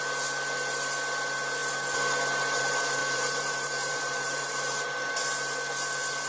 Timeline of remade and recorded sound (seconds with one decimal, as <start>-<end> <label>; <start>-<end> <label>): 0.0-3.0 recorded; 3.0-5.1 remade; 5.1-6.3 recorded